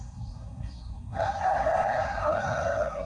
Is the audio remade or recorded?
remade